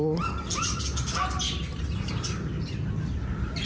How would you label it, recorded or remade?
recorded